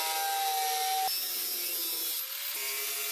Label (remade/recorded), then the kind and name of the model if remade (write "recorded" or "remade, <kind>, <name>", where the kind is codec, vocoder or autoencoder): recorded